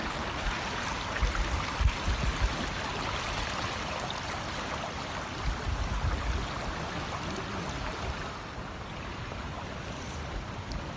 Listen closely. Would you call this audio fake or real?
real